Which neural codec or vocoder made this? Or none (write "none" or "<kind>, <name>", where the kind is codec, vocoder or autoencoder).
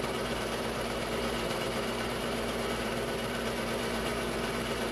vocoder, BigVGAN v2